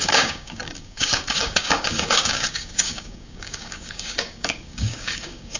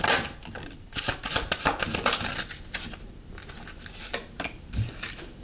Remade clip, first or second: first